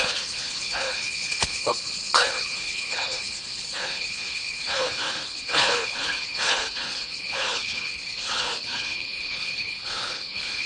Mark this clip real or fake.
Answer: fake